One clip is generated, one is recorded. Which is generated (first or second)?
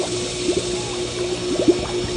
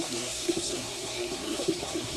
second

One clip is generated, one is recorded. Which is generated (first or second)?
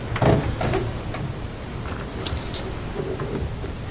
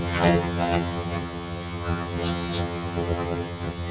second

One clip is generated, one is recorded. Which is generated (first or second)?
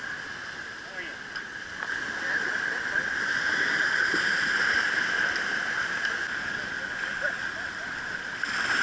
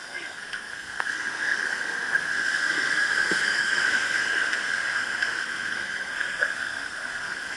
second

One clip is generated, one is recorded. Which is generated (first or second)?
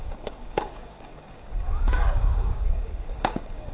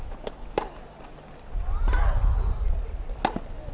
first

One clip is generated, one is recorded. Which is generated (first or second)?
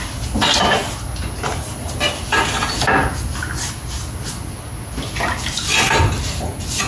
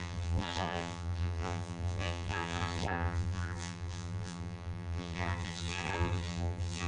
second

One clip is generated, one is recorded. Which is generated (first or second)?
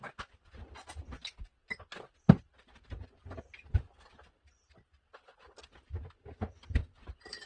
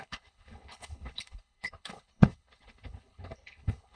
second